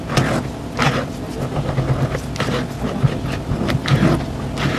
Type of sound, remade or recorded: recorded